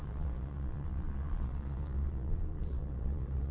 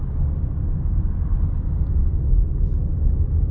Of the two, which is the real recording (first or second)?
second